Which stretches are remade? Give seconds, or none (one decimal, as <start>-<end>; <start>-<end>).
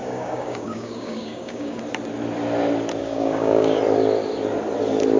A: 0.0-1.8; 3.0-3.8